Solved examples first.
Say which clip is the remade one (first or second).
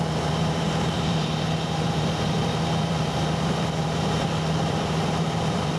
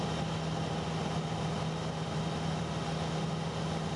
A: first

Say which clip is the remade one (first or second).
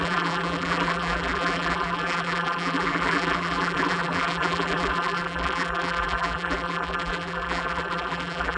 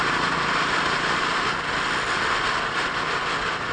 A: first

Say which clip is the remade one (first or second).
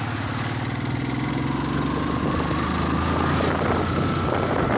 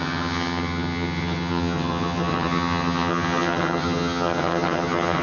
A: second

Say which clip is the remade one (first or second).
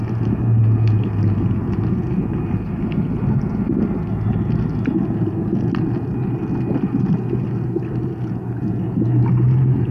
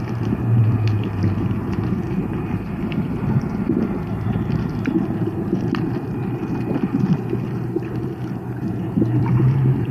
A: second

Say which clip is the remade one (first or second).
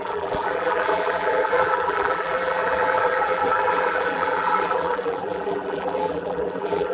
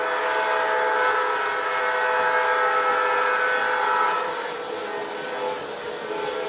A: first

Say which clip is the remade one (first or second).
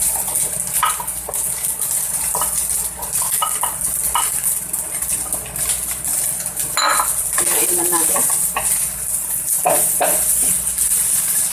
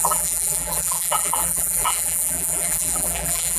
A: second